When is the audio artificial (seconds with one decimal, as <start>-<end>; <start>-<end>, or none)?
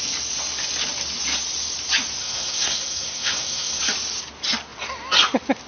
2.2-3.8